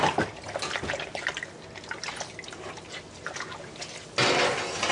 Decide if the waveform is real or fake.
real